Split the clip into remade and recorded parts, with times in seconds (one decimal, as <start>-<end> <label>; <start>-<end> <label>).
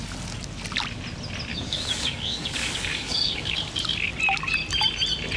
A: 0.0-1.5 recorded; 1.5-3.5 remade; 3.5-5.4 recorded